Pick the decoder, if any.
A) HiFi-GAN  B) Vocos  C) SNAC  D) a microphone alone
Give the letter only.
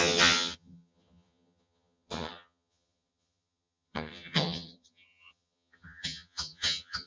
A